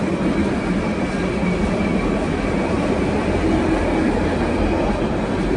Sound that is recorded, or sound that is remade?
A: recorded